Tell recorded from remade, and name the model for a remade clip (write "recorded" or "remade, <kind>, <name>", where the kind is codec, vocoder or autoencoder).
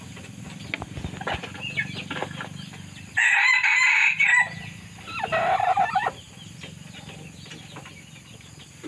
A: recorded